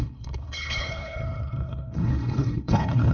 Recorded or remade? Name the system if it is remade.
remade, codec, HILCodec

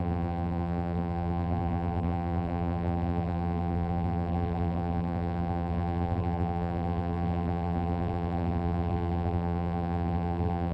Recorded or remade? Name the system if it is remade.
remade, vocoder, BigVGAN v2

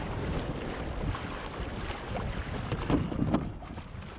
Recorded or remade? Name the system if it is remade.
recorded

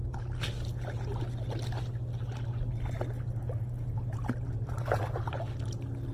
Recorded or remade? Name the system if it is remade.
recorded